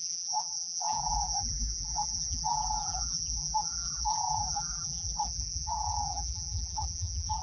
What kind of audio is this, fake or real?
fake